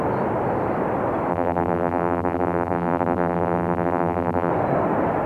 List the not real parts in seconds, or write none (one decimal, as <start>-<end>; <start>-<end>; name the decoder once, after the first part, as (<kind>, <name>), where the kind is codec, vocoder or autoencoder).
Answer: 1.3-4.5 (vocoder, BigVGAN v2)